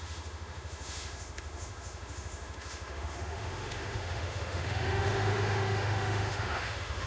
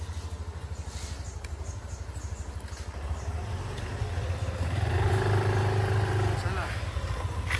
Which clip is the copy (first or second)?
first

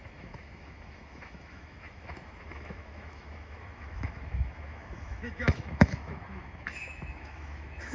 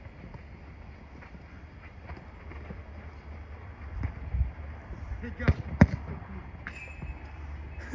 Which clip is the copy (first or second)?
first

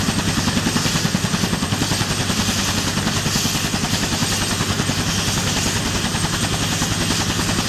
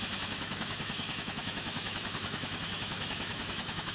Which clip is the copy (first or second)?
second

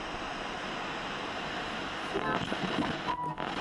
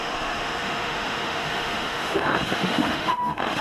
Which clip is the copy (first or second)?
second